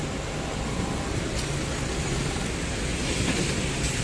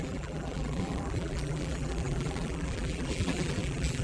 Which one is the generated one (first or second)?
second